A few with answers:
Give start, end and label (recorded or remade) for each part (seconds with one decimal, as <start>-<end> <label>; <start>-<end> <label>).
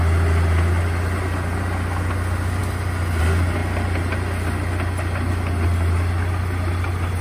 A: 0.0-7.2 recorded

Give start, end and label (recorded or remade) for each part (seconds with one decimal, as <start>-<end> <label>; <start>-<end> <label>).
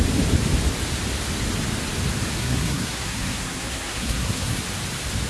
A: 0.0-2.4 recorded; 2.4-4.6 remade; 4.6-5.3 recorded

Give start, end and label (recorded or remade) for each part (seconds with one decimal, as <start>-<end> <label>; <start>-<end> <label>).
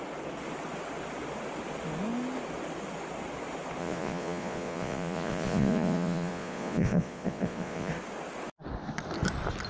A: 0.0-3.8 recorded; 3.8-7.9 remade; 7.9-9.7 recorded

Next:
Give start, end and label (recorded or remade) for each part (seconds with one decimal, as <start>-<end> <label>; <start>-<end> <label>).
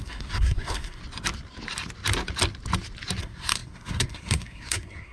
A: 0.0-1.0 remade; 1.0-3.2 recorded; 3.2-5.1 remade